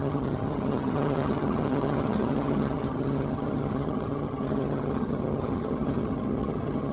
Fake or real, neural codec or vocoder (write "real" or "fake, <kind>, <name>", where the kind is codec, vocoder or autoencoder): fake, vocoder, HiFi-GAN